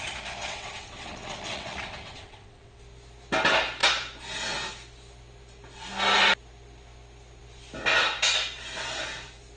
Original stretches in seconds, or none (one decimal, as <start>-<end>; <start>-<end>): 0.0-0.4; 2.8-9.6